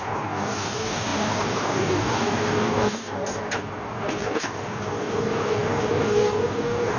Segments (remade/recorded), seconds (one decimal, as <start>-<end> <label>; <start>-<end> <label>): 0.0-7.0 remade